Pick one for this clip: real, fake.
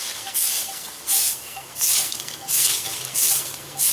fake